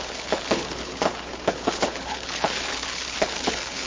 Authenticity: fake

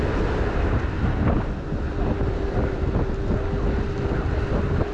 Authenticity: real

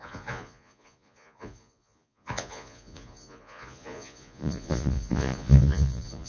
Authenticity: fake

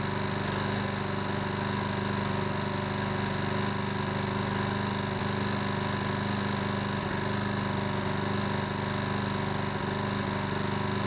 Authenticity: real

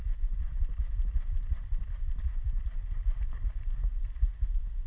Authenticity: real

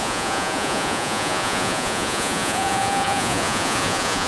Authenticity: fake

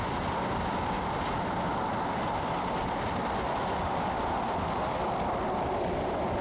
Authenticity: real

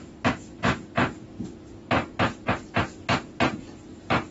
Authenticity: real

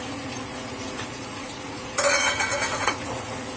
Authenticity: fake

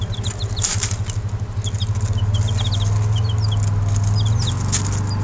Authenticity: real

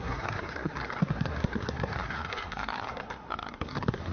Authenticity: fake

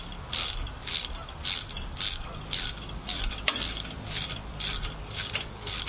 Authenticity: real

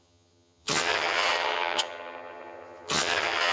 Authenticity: fake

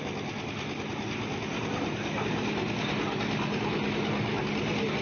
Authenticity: real